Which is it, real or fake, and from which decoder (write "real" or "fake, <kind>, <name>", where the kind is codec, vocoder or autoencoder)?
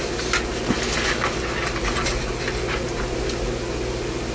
real